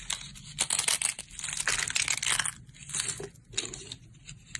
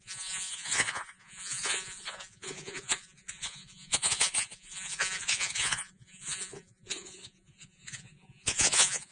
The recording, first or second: first